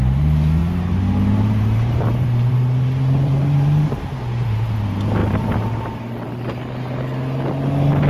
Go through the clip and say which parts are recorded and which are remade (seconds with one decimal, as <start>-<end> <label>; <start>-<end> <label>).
0.0-0.6 recorded; 0.6-4.8 remade; 4.8-5.2 recorded; 5.2-6.1 remade; 6.1-8.1 recorded